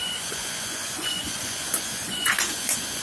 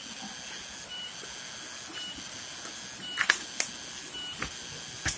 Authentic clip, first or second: second